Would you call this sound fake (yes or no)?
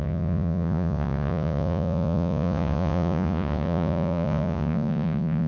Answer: yes